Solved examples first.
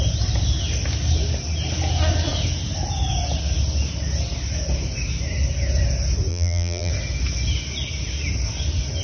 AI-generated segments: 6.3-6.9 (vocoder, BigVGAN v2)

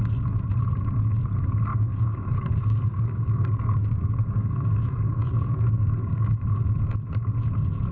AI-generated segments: 1.7-6.4 (codec, DAC)

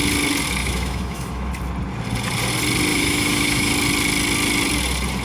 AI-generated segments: 0.6-1.5 (autoencoder, DAC-VAE); 2.9-3.7